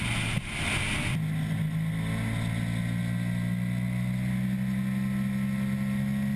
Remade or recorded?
recorded